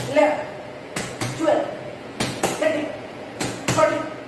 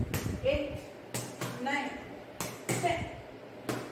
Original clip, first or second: second